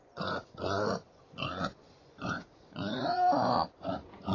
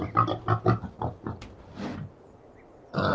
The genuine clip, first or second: second